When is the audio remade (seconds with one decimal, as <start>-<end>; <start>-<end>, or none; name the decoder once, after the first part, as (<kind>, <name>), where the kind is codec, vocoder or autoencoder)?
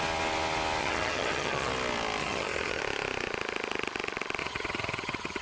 0.8-1.7 (vocoder, HiFi-GAN); 2.2-2.8; 4.4-5.4